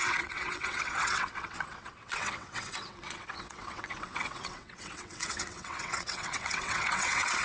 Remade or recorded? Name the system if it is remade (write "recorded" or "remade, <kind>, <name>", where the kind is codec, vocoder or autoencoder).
remade, vocoder, WaveNeXt